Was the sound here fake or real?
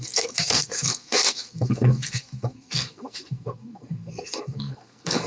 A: fake